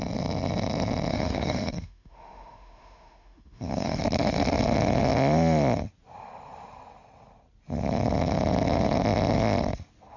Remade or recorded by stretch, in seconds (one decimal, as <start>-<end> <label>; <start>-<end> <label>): 0.0-1.1 recorded; 1.1-4.0 remade; 4.0-10.2 recorded